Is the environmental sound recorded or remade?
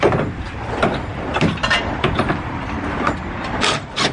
remade